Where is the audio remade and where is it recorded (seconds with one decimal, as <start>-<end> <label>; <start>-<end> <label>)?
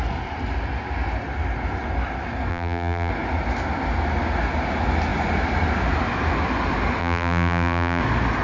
0.0-2.5 recorded; 2.5-3.1 remade; 3.1-7.0 recorded; 7.0-8.0 remade; 8.0-8.4 recorded